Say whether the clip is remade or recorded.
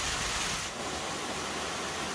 recorded